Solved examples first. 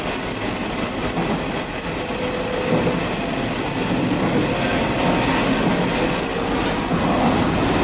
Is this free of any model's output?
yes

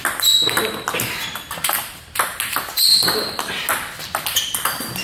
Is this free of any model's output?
yes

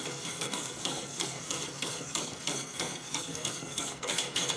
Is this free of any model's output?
no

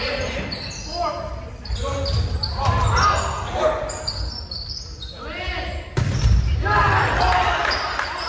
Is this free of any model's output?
yes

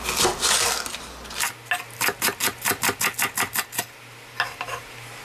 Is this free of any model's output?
yes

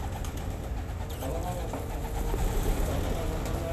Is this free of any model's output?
yes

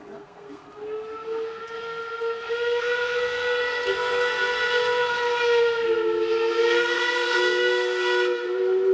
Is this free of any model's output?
no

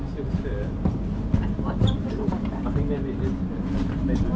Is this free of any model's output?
yes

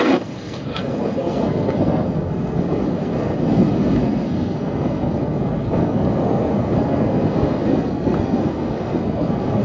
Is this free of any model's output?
no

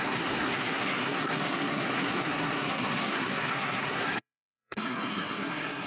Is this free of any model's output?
no